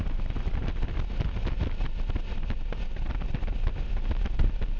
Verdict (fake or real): real